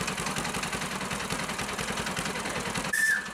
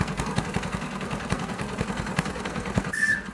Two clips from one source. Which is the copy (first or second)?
second